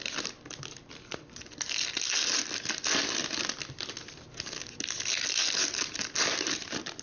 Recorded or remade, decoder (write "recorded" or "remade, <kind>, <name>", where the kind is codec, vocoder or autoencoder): recorded